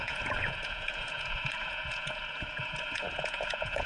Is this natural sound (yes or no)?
no